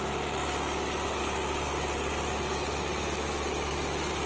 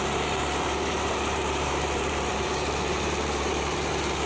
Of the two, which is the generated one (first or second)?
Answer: second